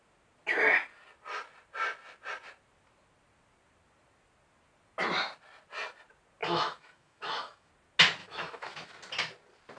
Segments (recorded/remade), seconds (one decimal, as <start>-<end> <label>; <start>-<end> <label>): 0.0-6.4 recorded; 6.4-7.7 remade; 7.7-8.2 recorded; 8.2-8.9 remade; 8.9-9.8 recorded